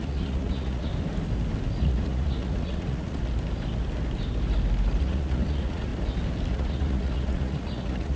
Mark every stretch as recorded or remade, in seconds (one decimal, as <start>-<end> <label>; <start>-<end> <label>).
0.0-0.9 remade; 0.9-1.8 recorded; 1.8-3.2 remade; 3.2-5.0 recorded; 5.0-5.9 remade; 5.9-6.5 recorded; 6.5-8.2 remade